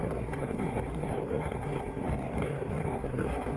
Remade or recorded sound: remade